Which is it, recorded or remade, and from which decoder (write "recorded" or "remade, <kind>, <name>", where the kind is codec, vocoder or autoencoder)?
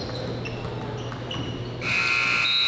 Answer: recorded